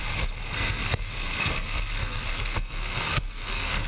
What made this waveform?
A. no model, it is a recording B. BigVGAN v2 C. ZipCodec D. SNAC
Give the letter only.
D